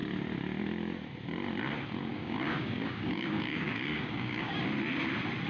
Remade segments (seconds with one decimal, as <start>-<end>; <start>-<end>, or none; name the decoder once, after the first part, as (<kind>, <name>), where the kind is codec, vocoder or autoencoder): 2.1-4.5 (codec, DAC)